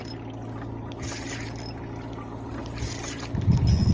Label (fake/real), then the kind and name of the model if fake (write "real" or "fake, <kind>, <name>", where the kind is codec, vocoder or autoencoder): real